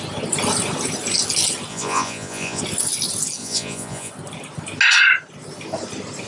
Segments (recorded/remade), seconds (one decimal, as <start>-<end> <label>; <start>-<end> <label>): 0.0-1.7 recorded; 1.7-2.6 remade; 2.6-3.4 recorded; 3.4-4.1 remade; 4.1-6.3 recorded